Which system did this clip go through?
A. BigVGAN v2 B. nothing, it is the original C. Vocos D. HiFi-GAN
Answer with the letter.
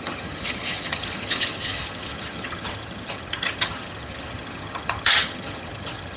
D